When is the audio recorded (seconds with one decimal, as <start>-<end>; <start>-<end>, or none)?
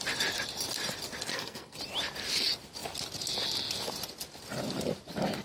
0.0-1.3; 1.8-5.4